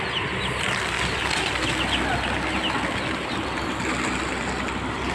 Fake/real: real